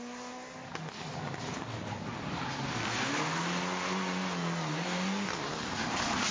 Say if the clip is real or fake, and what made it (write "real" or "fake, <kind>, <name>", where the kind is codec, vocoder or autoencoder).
real